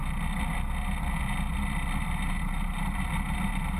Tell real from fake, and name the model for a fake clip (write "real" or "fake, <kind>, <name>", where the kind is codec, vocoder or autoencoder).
real